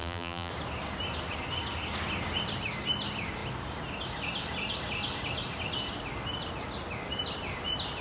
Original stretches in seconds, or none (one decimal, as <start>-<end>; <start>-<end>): 0.5-8.0